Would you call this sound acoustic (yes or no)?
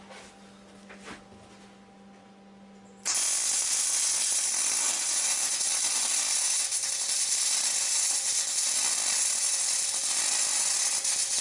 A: yes